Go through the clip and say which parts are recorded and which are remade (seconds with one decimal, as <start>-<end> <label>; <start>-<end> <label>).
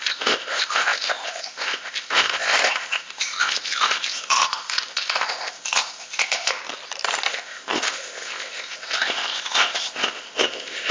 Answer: 0.0-6.6 remade; 6.6-7.3 recorded; 7.3-10.9 remade